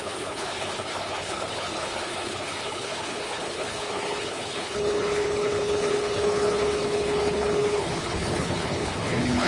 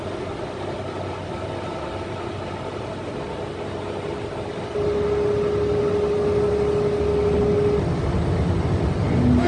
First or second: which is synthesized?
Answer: first